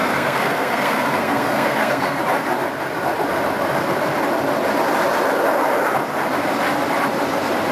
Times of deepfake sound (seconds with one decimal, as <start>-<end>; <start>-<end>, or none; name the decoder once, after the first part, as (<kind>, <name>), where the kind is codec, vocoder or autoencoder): 0.0-2.2 (codec, SNAC)